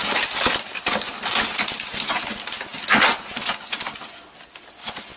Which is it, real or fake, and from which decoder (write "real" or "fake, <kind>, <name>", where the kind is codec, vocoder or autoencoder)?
real